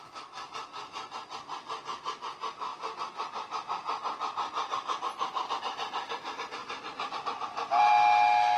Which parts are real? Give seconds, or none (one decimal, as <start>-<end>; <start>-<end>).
0.0-8.6